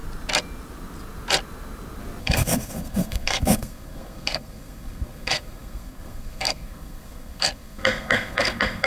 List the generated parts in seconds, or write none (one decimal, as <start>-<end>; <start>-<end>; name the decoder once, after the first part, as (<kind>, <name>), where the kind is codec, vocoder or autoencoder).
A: 2.2-8.9 (codec, SNAC)